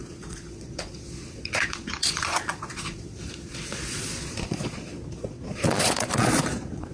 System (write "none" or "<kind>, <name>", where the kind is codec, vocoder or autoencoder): vocoder, Vocos